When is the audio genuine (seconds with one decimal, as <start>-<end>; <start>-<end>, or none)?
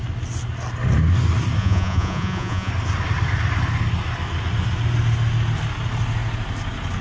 0.0-1.6; 2.7-7.0